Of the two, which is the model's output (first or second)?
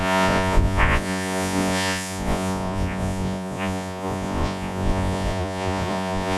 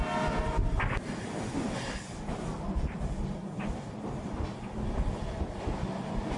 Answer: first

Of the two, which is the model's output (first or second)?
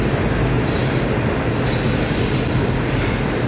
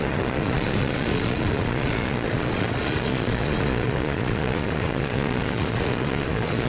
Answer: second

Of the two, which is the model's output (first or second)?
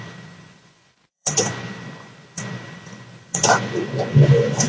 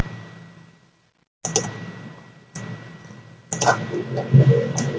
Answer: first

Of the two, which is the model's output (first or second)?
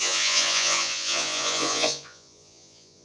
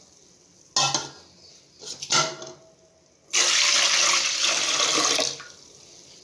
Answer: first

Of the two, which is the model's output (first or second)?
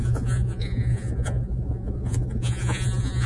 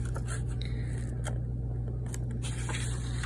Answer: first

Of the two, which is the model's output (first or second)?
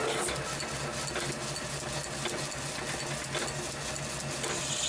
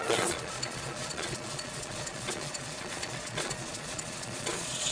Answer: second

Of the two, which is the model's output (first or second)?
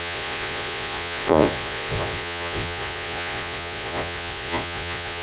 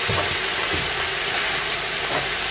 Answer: first